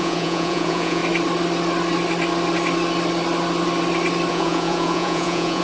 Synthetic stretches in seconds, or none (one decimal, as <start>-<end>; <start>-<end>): 0.0-1.0; 4.3-5.6